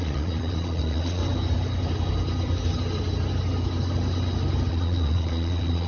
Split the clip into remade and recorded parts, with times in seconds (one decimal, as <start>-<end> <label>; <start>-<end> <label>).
0.0-1.2 remade; 1.2-4.7 recorded; 4.7-5.9 remade